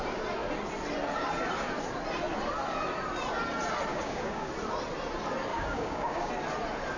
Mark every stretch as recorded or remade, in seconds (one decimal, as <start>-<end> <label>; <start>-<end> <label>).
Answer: 0.0-3.9 recorded; 3.9-4.5 remade; 4.5-5.5 recorded; 5.5-6.3 remade; 6.3-7.0 recorded